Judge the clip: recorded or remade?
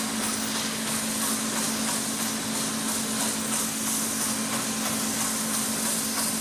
recorded